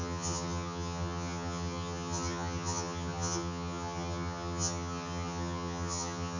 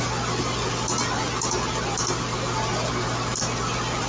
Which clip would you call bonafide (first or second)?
second